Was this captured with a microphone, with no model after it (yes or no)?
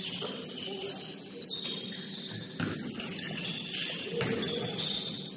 yes